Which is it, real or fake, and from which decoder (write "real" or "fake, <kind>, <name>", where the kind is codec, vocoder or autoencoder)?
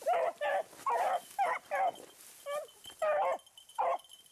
real